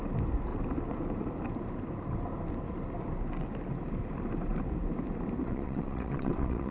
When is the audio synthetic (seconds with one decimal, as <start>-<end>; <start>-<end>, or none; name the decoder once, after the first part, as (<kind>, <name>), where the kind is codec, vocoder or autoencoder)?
5.4-6.7 (vocoder, WaveNeXt)